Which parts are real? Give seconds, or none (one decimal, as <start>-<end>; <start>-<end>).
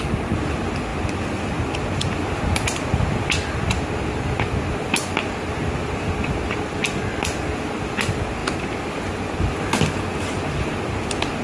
0.0-11.4